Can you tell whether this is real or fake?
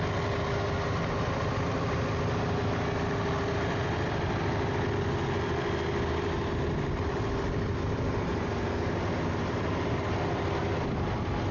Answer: real